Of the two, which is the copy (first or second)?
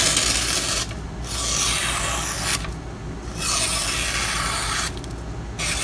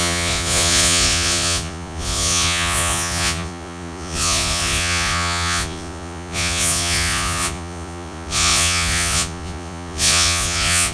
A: second